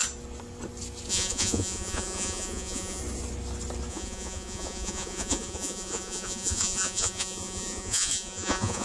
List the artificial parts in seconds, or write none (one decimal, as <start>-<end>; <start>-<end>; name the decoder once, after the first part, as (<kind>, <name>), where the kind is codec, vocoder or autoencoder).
1.1-3.0 (vocoder, Vocos); 3.9-8.8